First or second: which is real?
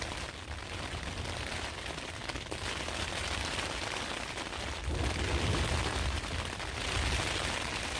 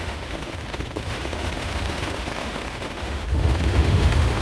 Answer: first